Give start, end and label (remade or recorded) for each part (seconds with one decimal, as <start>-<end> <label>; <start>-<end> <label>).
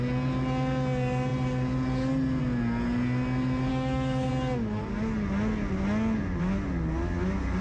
0.0-3.7 recorded; 3.7-4.3 remade; 4.3-7.6 recorded